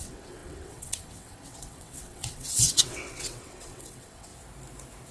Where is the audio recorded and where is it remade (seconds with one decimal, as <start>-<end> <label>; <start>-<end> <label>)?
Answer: 0.0-4.3 remade; 4.3-5.1 recorded